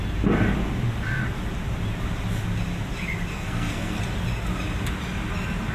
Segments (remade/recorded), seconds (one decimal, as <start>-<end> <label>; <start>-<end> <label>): 0.0-3.3 recorded; 3.3-4.0 remade; 4.0-5.7 recorded